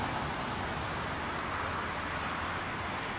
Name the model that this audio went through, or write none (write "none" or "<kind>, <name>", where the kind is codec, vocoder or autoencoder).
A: none